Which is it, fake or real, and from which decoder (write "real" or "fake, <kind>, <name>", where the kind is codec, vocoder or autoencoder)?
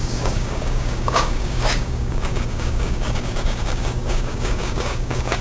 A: fake, codec, DAC